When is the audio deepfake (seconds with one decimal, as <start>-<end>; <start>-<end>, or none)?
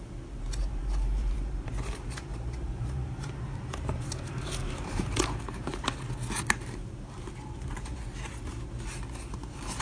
0.6-5.8; 6.8-7.3